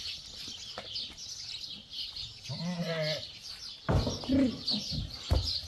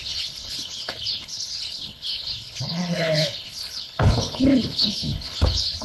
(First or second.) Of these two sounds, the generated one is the second